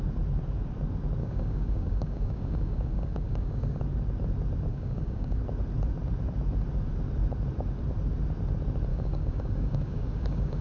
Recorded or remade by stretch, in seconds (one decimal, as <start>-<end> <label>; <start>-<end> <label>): 0.0-1.2 recorded; 1.2-3.8 remade; 3.8-4.7 recorded; 4.7-5.4 remade; 5.4-8.9 recorded; 8.9-10.6 remade